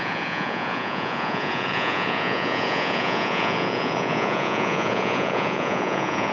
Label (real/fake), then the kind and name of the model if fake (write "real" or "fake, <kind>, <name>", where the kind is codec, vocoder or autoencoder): fake, vocoder, Vocos